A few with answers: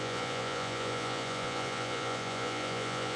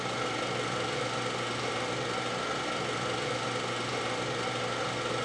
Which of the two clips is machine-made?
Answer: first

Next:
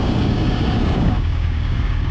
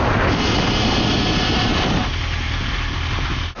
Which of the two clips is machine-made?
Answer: first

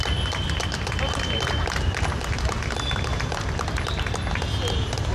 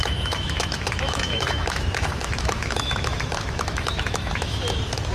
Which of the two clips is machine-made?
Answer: second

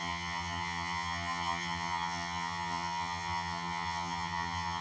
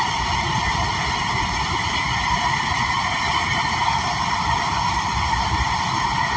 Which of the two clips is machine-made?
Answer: first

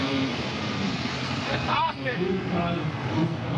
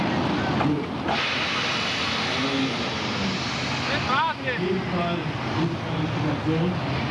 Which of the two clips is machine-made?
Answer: first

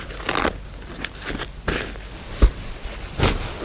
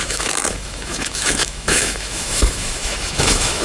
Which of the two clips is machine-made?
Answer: second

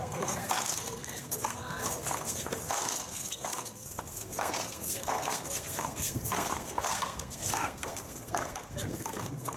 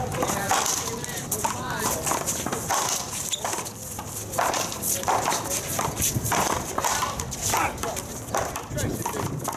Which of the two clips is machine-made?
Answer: first